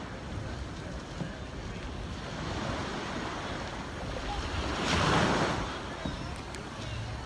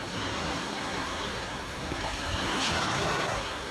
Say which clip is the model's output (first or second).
second